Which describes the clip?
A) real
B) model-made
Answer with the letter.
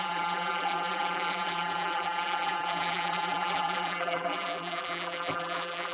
B